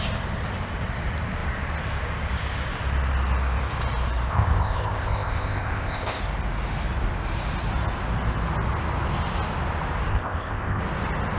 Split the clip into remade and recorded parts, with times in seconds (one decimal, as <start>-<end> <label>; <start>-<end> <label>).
0.0-4.3 recorded; 4.3-6.2 remade; 6.2-10.1 recorded; 10.1-10.8 remade; 10.8-11.4 recorded